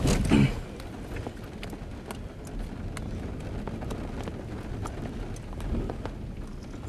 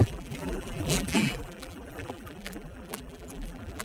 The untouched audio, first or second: first